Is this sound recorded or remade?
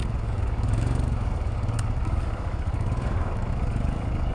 remade